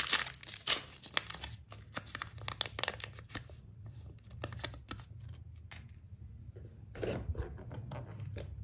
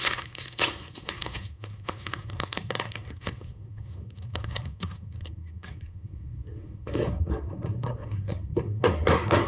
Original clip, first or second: first